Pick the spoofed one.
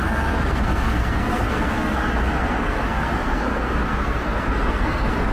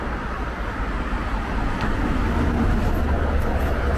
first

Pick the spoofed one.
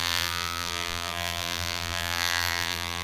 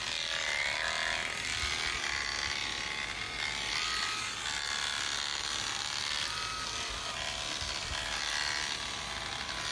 first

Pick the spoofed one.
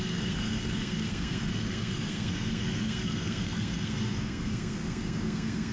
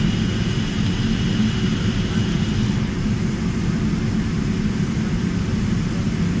first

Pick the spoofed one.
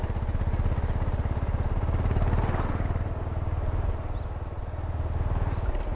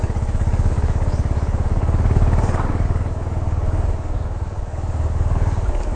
second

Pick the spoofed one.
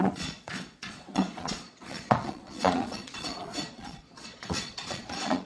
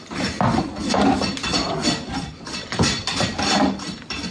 first